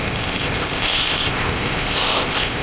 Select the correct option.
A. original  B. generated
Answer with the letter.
B